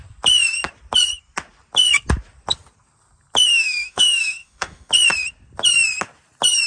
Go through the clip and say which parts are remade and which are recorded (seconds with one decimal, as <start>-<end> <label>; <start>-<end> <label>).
0.0-3.5 recorded; 3.5-4.9 remade; 4.9-6.7 recorded